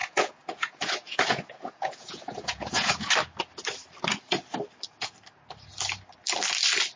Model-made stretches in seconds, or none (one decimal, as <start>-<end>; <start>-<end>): 0.0-3.1